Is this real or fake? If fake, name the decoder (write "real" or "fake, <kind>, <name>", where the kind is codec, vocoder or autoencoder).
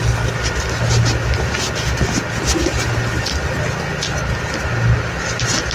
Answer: real